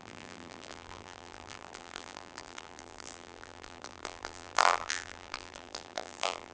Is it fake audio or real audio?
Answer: fake